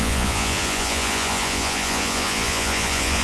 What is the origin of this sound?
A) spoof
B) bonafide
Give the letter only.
A